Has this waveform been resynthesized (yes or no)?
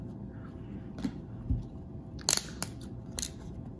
no